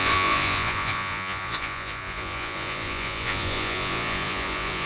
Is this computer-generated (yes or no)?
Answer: yes